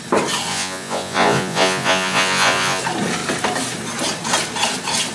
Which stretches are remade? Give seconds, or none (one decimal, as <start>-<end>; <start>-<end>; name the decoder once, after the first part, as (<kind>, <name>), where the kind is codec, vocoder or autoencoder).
0.5-2.8 (vocoder, Vocos)